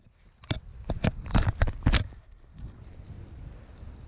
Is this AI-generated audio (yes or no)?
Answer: no